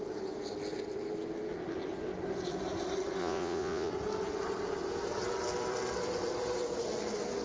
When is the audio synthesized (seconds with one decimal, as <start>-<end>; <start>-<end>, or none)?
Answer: 3.2-3.9